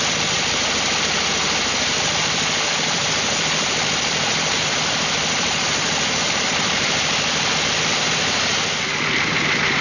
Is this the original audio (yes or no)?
no